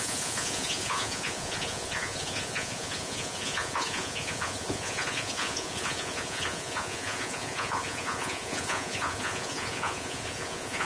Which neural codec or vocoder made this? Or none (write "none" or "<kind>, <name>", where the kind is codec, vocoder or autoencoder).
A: vocoder, Vocos